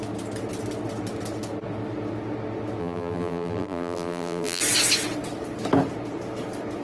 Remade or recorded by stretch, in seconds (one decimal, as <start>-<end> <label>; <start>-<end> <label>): 0.0-2.8 recorded; 2.8-4.6 remade; 4.6-6.8 recorded